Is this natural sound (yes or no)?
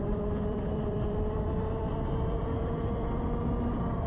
no